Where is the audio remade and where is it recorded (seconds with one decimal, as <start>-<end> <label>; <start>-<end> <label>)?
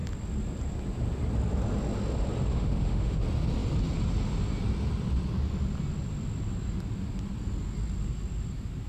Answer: 0.0-2.5 recorded; 2.5-3.2 remade; 3.2-8.9 recorded